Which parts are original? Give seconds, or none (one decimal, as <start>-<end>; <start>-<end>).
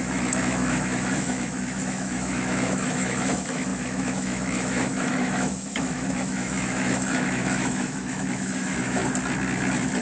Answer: 9.0-10.0